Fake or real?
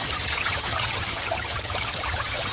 fake